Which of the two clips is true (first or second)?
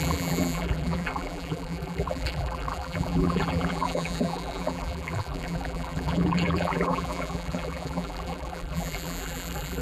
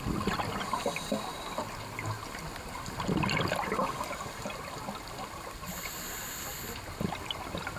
second